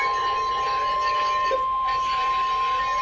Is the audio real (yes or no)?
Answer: yes